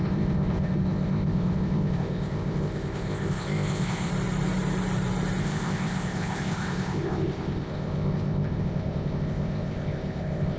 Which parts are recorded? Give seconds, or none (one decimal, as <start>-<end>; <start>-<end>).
4.1-5.4